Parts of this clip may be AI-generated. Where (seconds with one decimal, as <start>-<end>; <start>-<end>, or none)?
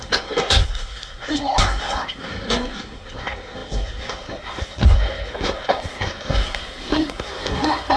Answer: 0.0-8.0